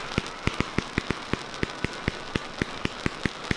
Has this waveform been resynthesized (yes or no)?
no